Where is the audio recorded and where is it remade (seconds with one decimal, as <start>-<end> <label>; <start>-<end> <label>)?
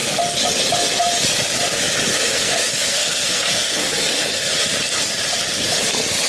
0.0-2.1 recorded; 2.1-4.5 remade; 4.5-6.3 recorded